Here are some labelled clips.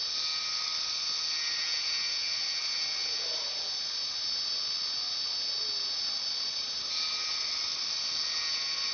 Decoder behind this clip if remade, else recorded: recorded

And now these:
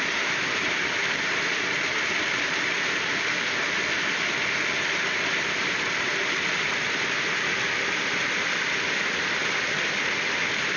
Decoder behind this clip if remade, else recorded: recorded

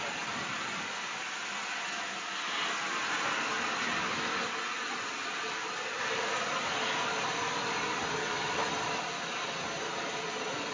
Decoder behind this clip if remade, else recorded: recorded